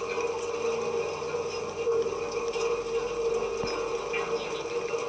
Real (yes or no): yes